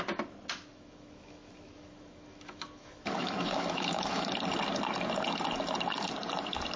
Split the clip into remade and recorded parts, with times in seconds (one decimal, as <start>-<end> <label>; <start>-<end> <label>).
0.0-0.7 recorded; 0.7-4.3 remade; 4.3-6.8 recorded